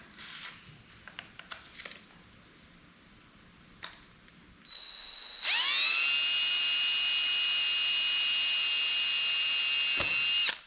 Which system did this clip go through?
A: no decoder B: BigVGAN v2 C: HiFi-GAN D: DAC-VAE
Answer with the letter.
A